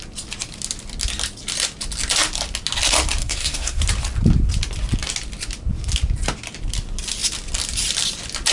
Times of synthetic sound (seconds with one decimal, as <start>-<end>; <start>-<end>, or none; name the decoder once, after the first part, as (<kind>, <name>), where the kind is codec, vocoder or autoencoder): 3.2-3.8 (codec, SNAC)